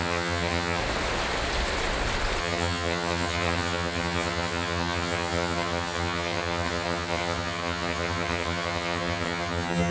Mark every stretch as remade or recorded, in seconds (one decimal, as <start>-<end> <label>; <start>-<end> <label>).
0.0-0.8 remade; 0.8-2.4 recorded; 2.4-9.9 remade